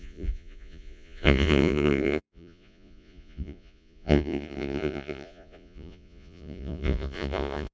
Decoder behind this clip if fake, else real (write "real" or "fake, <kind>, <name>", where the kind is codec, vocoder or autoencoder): fake, vocoder, Vocos